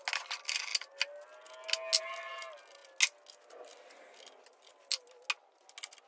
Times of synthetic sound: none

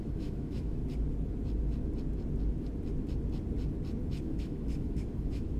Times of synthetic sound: 0.0-0.8 (autoencoder, DAC-VAE); 4.2-5.6

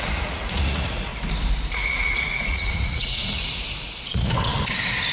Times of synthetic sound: 0.0-1.1 (vocoder, Vocos); 1.9-4.5